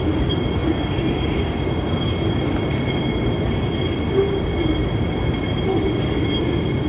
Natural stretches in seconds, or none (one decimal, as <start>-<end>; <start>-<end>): 0.0-6.9